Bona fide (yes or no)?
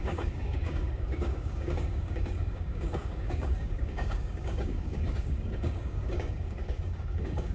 no